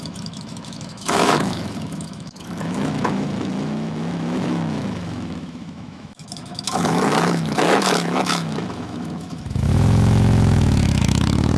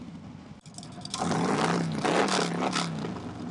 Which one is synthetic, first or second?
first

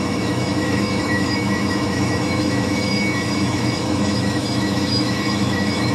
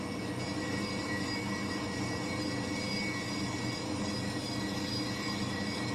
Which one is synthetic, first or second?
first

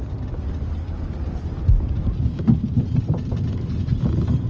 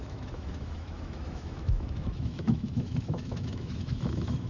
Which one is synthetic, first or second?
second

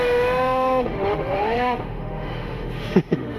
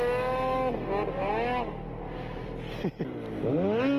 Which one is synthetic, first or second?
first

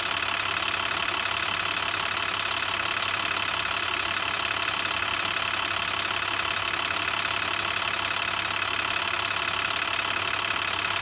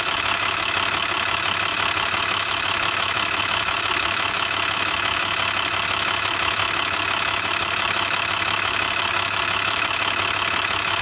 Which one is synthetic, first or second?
second